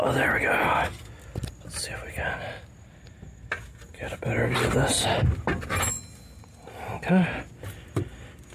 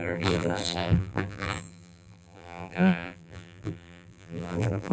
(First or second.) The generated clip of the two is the second